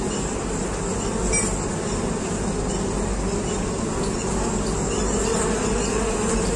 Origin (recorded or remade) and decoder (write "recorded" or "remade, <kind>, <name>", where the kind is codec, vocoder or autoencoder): recorded